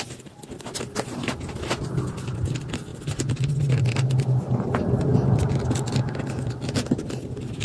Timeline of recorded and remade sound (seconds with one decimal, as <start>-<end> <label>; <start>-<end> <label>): 0.0-7.6 recorded